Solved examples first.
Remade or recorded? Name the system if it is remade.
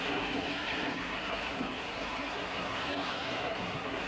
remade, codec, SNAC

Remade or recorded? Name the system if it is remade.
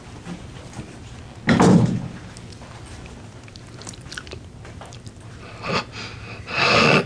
recorded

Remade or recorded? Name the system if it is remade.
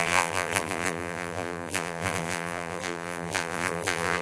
remade, vocoder, BigVGAN v2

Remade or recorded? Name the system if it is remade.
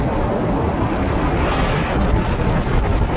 recorded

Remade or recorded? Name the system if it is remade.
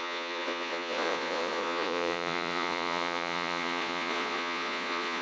remade, vocoder, Vocos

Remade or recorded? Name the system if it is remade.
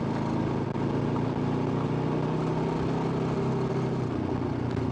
recorded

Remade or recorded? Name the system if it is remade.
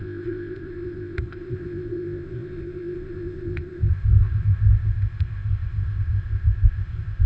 remade, codec, ZipCodec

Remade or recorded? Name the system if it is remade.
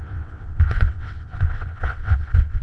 remade, vocoder, WaveNeXt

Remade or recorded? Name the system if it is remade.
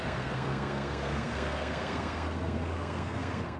remade, codec, SNAC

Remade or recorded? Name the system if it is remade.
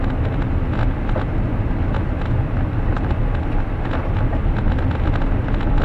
recorded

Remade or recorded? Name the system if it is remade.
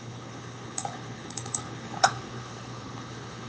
remade, codec, HILCodec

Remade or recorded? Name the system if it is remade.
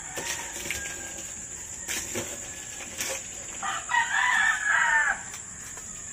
recorded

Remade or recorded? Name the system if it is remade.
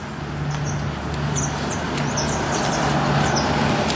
recorded